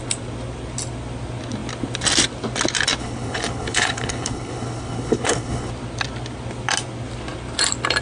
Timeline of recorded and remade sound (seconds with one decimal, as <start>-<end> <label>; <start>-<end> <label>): 0.0-3.0 recorded; 3.0-5.7 remade; 5.7-8.0 recorded

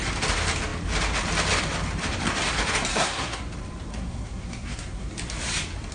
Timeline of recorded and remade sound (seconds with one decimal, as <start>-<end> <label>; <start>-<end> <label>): 0.0-2.9 recorded; 2.9-3.4 remade; 3.4-3.9 recorded; 3.9-5.1 remade; 5.1-5.9 recorded

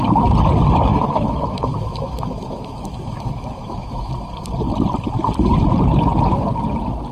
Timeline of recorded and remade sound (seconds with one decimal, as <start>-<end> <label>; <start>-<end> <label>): 0.0-0.9 recorded; 0.9-4.1 remade; 4.1-7.1 recorded

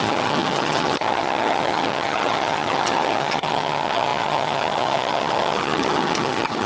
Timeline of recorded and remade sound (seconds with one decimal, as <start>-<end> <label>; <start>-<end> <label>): 0.0-6.7 remade

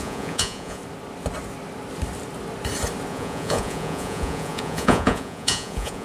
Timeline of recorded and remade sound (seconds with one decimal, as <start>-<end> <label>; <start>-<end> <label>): 0.0-0.8 remade; 0.8-3.1 recorded; 3.1-6.0 remade

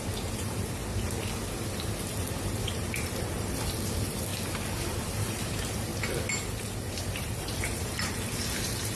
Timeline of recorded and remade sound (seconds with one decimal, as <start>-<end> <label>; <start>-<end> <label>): 0.0-0.8 remade; 0.8-2.5 recorded; 2.5-4.3 remade; 4.3-4.9 recorded; 4.9-5.9 remade; 5.9-6.9 recorded; 6.9-9.0 remade